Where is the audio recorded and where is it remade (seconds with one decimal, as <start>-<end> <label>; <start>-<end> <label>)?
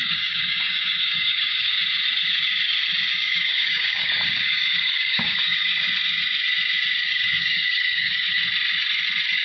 0.0-1.7 remade; 1.7-3.1 recorded; 3.1-5.7 remade; 5.7-7.0 recorded; 7.0-8.4 remade; 8.4-9.4 recorded